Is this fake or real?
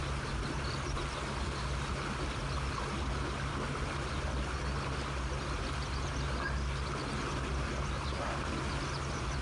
real